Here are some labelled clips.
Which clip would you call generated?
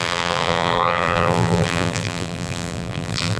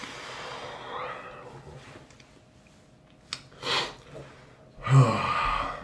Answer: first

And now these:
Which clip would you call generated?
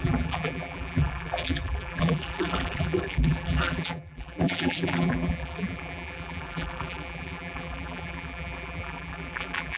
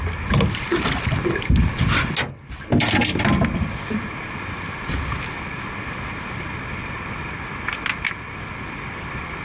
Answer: first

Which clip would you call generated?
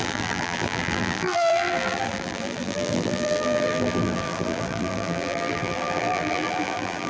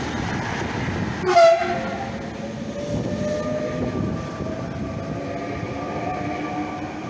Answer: first